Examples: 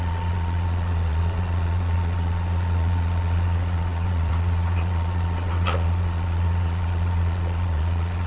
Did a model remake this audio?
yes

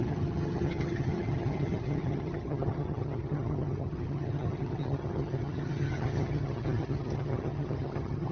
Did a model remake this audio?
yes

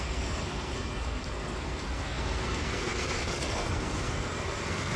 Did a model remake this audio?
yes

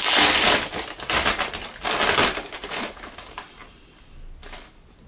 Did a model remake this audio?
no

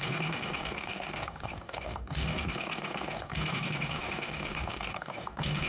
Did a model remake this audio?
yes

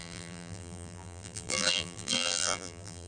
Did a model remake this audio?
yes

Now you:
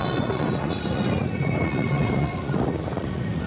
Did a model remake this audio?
yes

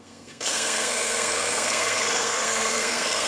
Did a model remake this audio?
yes